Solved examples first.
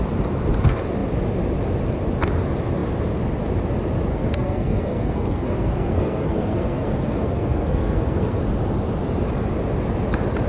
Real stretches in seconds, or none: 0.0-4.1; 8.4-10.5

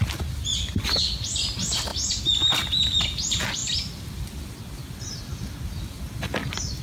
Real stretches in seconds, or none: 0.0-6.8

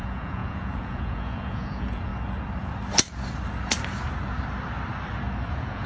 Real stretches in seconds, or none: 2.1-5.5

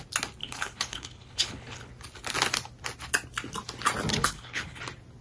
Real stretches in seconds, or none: 0.0-0.4; 1.9-4.1; 4.8-5.2

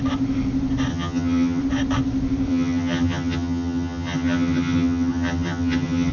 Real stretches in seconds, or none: 0.0-0.9; 1.6-2.5

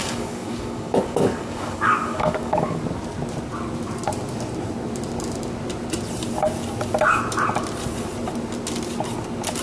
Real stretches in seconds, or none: 2.8-9.6

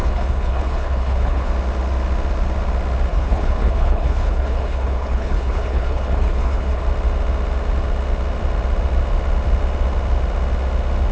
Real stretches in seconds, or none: 1.5-3.1; 6.8-11.1